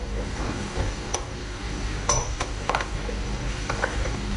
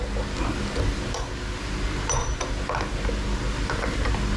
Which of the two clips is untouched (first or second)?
second